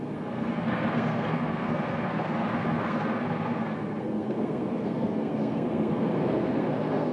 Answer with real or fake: fake